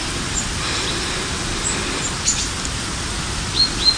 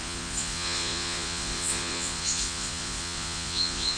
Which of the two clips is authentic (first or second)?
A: first